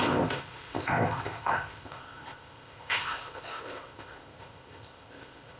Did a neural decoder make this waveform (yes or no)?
yes